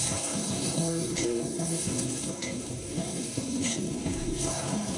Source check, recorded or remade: remade